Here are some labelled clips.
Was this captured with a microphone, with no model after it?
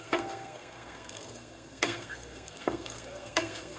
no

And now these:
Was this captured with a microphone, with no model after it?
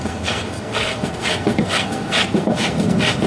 no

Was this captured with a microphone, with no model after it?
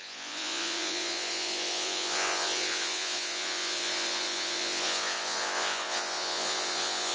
no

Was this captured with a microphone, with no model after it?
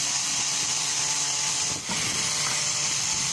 yes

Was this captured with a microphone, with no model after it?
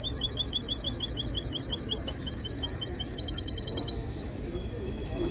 no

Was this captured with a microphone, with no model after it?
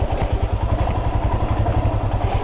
yes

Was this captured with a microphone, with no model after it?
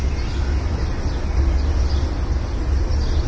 yes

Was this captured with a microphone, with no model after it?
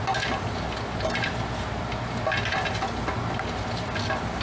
yes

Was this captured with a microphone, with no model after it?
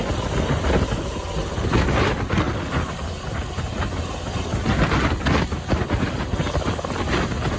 yes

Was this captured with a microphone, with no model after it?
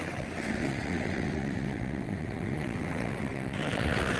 no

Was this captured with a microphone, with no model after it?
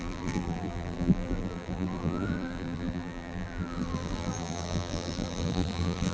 no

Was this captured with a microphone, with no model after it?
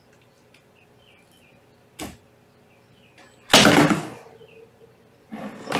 yes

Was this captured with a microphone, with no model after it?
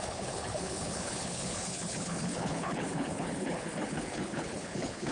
no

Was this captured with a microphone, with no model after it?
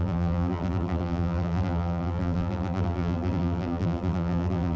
no